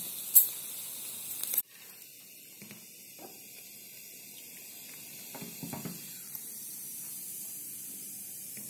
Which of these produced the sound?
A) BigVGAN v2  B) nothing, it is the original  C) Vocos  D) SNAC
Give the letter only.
B